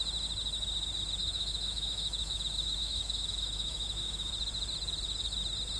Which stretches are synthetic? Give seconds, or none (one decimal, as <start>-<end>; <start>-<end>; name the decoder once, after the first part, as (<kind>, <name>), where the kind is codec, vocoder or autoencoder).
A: 1.2-4.3 (autoencoder, DAC-VAE)